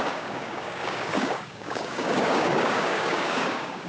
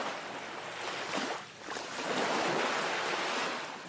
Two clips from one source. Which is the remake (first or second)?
first